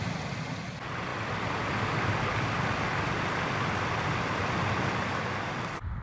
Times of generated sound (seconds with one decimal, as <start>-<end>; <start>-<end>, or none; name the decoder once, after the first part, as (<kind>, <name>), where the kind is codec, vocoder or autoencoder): 1.1-1.7 (vocoder, BigVGAN v2)